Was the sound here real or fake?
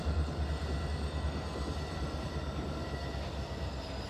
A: fake